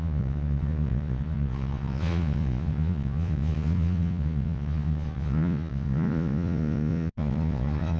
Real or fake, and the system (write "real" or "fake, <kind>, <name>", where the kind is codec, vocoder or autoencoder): fake, vocoder, Vocos